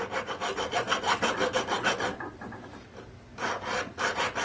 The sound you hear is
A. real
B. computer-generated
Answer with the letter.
A